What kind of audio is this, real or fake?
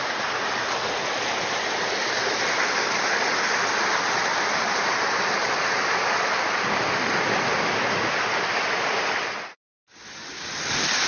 real